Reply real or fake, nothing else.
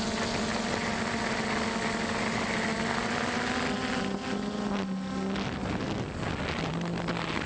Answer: real